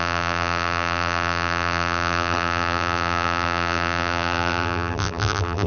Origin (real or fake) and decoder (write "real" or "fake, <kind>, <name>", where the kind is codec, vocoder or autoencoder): fake, vocoder, BigVGAN v2